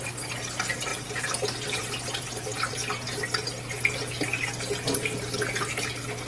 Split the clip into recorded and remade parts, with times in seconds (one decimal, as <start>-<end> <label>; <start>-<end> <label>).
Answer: 0.0-6.3 recorded